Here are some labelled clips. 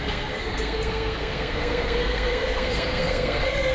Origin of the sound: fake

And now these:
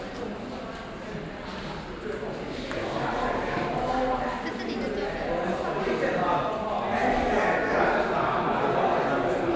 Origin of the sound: real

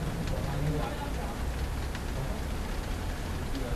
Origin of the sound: real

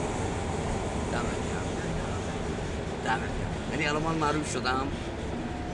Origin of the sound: real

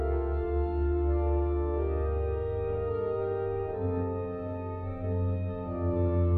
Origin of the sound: fake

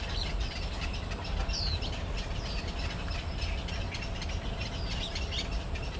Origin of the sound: real